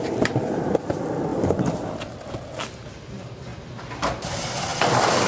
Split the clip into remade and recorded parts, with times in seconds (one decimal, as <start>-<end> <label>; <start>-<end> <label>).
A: 0.0-1.3 remade; 1.3-2.3 recorded; 2.3-3.5 remade; 3.5-4.2 recorded; 4.2-5.3 remade